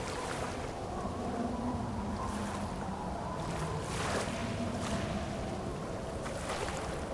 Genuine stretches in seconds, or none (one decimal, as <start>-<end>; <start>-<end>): 0.0-7.1